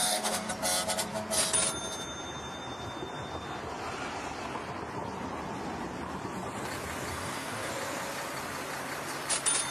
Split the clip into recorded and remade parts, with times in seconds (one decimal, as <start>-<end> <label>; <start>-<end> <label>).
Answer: 0.0-0.5 remade; 0.5-7.1 recorded; 7.1-7.7 remade; 7.7-9.7 recorded